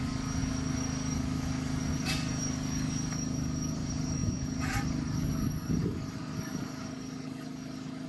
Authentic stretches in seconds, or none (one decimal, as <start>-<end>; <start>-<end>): none